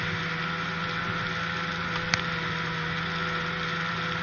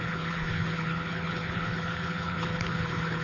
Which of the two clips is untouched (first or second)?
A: first